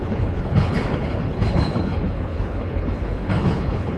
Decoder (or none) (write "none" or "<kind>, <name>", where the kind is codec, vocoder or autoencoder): codec, HILCodec